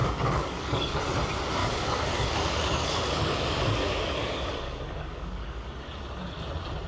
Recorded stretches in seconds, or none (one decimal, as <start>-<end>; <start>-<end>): 1.0-1.6; 5.7-6.9